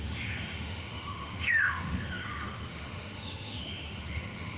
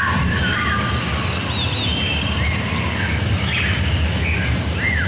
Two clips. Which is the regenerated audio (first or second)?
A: first